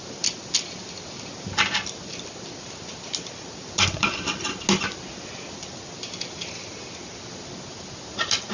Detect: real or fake real